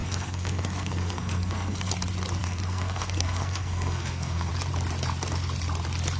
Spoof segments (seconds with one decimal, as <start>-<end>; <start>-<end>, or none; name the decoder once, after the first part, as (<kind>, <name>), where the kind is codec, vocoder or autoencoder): 0.0-1.9 (codec, SNAC); 2.4-4.5